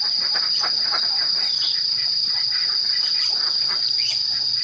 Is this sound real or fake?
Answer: real